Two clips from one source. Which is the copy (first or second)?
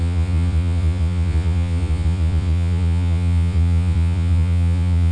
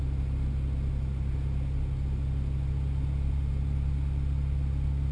first